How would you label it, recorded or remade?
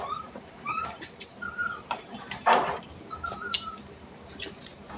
remade